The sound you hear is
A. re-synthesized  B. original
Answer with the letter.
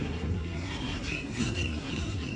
A